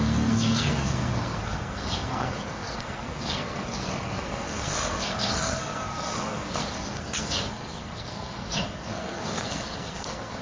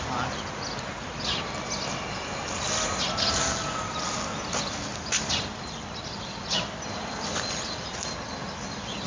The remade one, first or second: first